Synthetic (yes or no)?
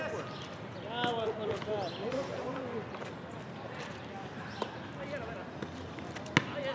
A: no